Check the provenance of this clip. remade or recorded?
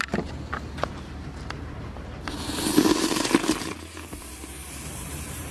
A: recorded